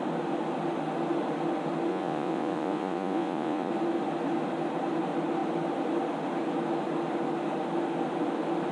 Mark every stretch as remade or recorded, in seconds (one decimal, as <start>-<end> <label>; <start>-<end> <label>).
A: 0.0-1.9 recorded; 1.9-3.7 remade; 3.7-8.7 recorded